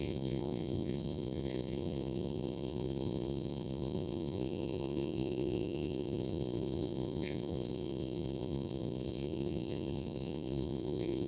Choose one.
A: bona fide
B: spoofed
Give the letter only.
B